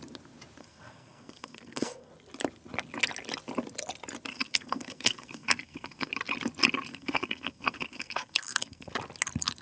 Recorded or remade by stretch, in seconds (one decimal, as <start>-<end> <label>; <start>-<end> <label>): 0.0-0.6 recorded; 0.6-2.1 remade; 2.1-4.3 recorded; 4.3-6.1 remade; 6.1-6.9 recorded; 6.9-8.9 remade; 8.9-9.6 recorded